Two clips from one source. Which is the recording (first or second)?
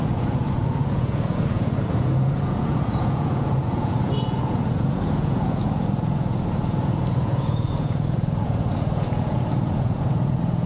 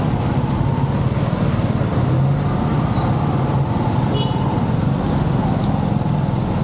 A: second